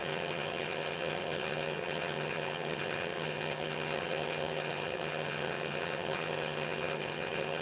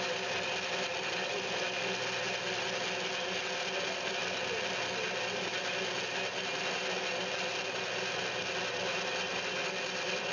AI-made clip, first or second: first